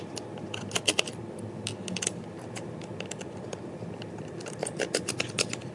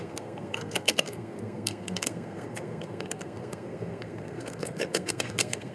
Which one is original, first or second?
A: first